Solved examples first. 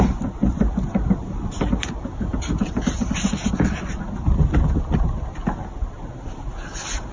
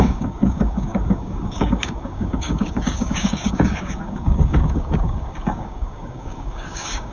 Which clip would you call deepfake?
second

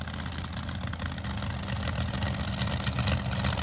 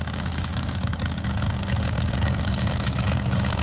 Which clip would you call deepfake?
second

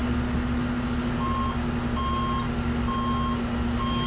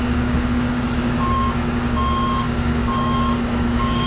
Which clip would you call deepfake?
second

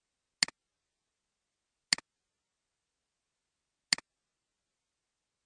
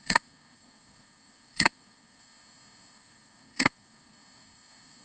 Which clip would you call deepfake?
second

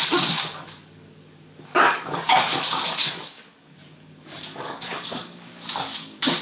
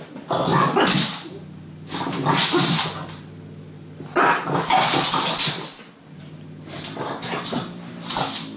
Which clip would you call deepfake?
first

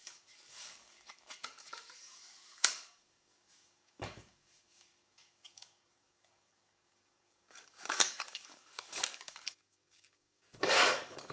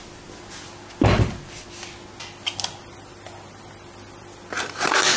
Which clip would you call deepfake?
first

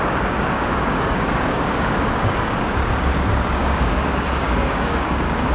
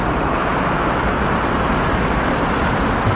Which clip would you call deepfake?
first